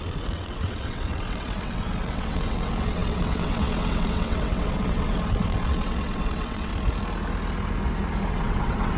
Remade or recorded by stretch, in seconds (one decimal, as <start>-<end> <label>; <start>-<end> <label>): 0.0-6.7 remade; 6.7-8.3 recorded; 8.3-9.0 remade